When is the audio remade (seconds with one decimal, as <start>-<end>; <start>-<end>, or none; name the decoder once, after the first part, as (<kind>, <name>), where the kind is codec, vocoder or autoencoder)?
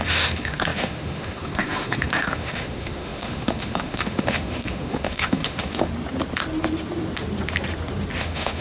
0.0-5.9 (autoencoder, DAC-VAE); 8.2-8.6